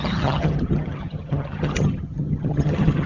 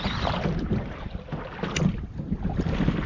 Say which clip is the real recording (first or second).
second